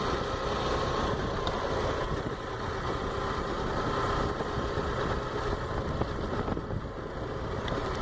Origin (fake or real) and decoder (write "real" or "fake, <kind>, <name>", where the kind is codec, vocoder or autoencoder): real